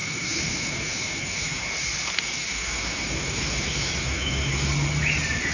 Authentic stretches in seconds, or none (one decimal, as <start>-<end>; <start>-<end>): 1.6-2.5; 4.7-5.5